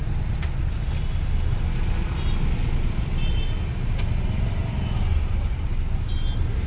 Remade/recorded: recorded